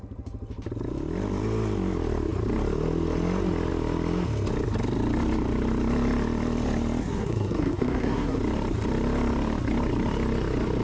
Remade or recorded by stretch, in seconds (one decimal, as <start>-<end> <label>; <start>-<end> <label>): 0.0-7.0 recorded; 7.0-8.4 remade; 8.4-10.8 recorded